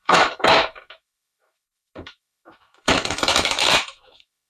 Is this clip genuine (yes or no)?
no